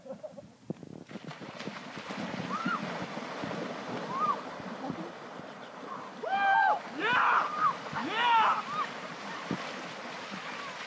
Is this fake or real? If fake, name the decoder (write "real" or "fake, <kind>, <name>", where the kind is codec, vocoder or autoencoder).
real